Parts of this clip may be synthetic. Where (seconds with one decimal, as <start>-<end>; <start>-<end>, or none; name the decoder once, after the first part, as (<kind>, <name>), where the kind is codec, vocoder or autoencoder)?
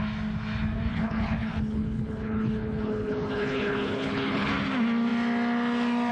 0.9-4.5 (codec, HILCodec)